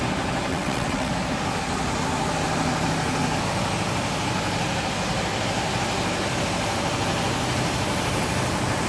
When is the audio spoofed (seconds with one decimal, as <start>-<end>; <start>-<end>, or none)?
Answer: 0.5-1.1